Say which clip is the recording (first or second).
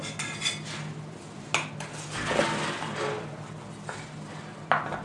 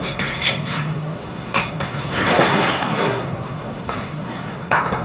first